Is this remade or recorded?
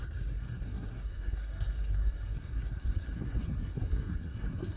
remade